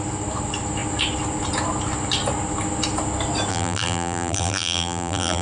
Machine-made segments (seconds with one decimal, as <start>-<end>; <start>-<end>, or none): 3.5-5.4